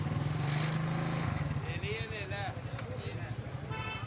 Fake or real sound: real